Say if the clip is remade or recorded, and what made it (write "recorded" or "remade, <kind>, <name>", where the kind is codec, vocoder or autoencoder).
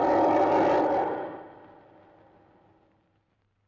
recorded